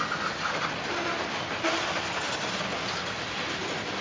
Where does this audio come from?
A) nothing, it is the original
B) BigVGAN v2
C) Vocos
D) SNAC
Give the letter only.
A